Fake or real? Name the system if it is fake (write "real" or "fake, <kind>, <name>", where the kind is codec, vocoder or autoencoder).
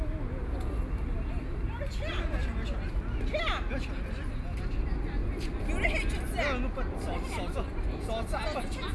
real